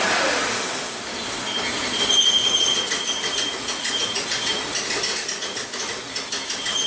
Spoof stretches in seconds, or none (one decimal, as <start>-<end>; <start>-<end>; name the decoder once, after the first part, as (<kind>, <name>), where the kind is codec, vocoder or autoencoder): 2.4-6.1 (vocoder, Vocos)